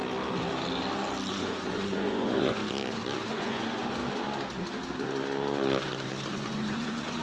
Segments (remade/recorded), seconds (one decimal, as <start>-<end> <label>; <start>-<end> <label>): 0.0-1.3 recorded; 1.3-2.6 remade; 2.6-3.3 recorded; 3.3-4.0 remade; 4.0-6.3 recorded; 6.3-7.2 remade